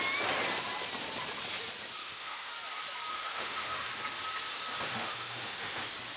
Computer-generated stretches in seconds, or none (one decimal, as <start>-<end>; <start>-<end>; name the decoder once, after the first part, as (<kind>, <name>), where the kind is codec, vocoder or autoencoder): 2.0-2.5 (autoencoder, DAC-VAE); 3.1-3.9; 4.9-5.8